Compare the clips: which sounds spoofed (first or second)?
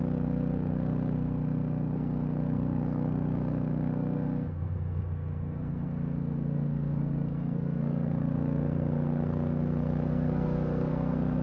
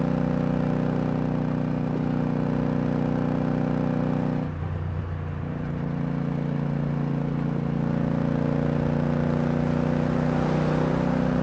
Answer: first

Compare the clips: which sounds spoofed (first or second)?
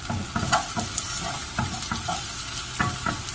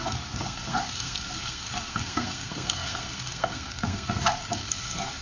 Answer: second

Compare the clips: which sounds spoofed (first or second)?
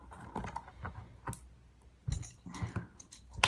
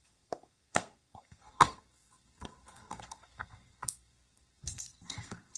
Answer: second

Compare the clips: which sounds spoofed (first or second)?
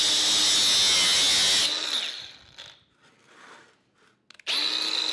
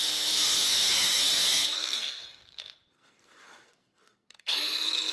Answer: second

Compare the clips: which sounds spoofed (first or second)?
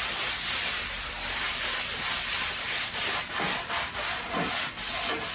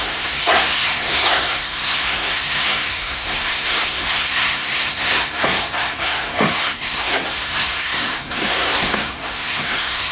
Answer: second